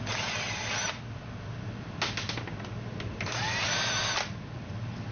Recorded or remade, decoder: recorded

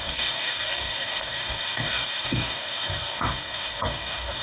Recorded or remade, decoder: remade, codec, DAC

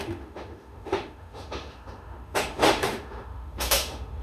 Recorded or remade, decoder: remade, autoencoder, DAC-VAE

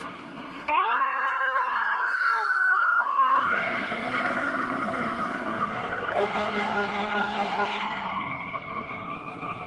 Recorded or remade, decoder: remade, codec, SNAC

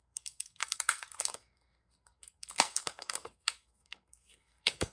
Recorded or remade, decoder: remade, codec, SNAC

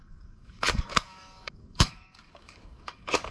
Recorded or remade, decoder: remade, codec, DAC